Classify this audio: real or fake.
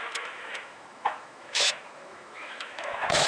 fake